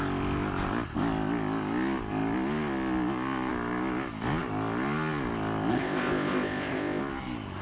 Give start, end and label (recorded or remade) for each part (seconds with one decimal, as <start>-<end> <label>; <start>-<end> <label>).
0.0-5.7 recorded; 5.7-7.0 remade; 7.0-7.6 recorded